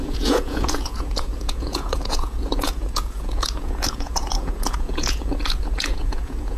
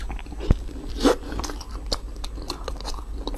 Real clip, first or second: second